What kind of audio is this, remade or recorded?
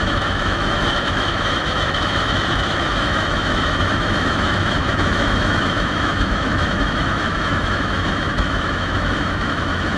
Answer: remade